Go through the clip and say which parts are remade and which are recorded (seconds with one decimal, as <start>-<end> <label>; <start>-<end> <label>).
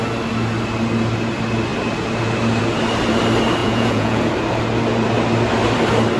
0.0-3.6 recorded; 3.6-4.2 remade; 4.2-6.2 recorded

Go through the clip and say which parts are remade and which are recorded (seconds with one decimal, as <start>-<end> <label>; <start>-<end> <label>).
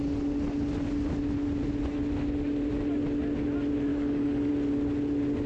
0.0-3.9 recorded; 3.9-4.5 remade; 4.5-5.5 recorded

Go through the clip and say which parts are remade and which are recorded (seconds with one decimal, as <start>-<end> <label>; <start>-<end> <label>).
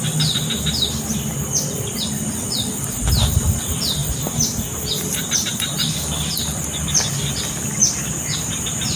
0.0-9.0 recorded